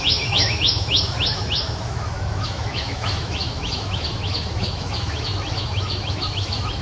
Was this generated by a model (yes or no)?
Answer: yes